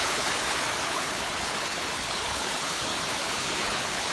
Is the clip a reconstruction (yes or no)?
yes